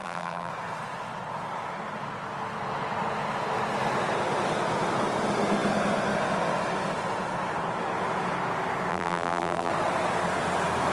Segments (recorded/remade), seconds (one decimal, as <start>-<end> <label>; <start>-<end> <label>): 0.0-0.5 remade; 0.5-8.9 recorded; 8.9-9.7 remade; 9.7-10.9 recorded